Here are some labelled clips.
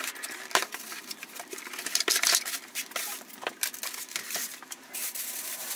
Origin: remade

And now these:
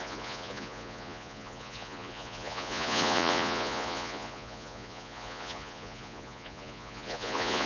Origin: remade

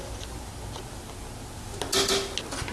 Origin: recorded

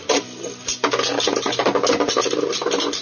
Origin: recorded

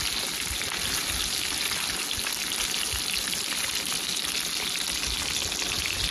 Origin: recorded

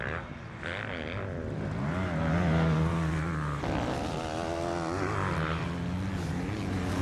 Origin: recorded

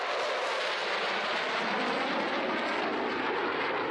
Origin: recorded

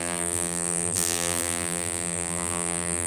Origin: remade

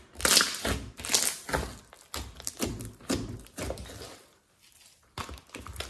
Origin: recorded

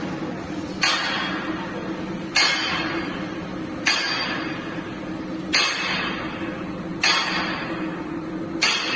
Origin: recorded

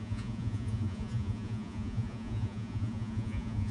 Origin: remade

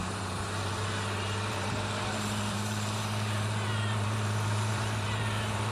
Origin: remade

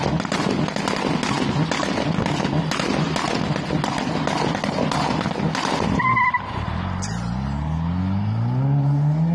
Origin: recorded